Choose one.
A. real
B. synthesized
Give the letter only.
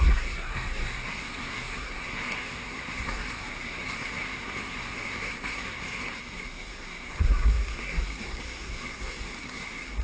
B